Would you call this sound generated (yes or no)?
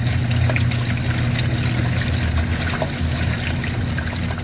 no